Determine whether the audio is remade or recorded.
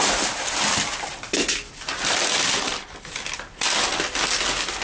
recorded